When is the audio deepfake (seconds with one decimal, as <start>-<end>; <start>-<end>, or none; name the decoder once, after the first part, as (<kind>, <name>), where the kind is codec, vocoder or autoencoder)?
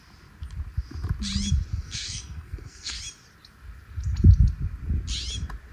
1.7-3.0 (codec, SNAC)